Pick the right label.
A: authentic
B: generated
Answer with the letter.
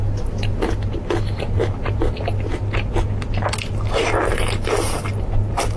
A